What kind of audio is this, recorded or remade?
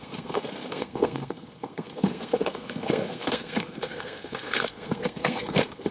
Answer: remade